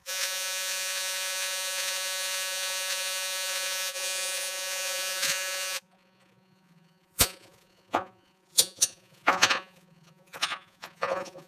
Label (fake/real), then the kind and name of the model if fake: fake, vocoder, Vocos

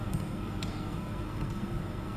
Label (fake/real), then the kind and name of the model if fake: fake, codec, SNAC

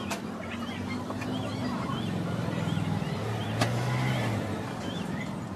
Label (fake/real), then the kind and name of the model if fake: real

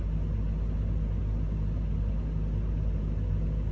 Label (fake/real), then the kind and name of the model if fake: real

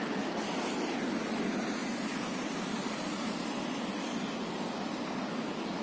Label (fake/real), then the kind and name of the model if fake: real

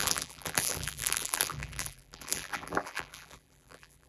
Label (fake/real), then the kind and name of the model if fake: fake, vocoder, BigVGAN v2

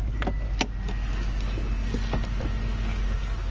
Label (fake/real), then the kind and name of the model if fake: real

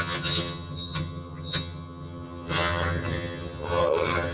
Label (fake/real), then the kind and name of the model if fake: fake, vocoder, HiFi-GAN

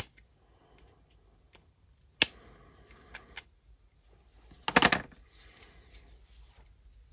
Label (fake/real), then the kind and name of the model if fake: real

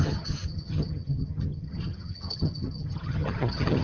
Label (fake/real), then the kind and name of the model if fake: fake, vocoder, HiFi-GAN